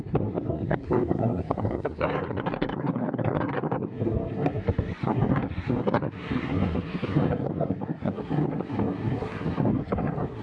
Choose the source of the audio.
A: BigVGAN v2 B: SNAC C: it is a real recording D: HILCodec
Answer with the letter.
B